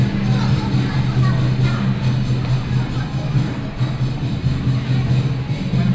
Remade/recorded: recorded